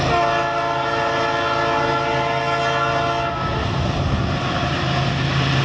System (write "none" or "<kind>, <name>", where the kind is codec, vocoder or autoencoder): none